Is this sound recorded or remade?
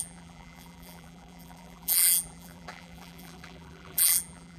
remade